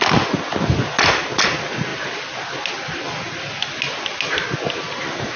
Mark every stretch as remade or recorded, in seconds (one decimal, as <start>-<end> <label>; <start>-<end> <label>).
0.0-5.4 recorded